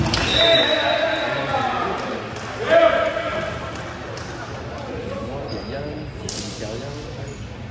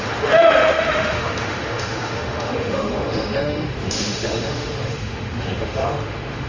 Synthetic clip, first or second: second